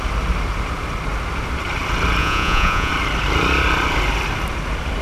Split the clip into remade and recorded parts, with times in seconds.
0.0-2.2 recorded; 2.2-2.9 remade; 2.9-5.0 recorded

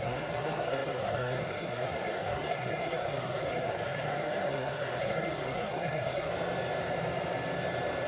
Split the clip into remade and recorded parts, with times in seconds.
0.0-6.3 remade; 6.3-8.1 recorded